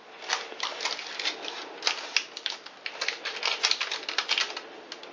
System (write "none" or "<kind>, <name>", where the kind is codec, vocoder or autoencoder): none